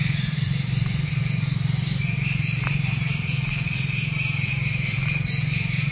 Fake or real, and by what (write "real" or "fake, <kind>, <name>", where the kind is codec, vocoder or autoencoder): fake, vocoder, BigVGAN v2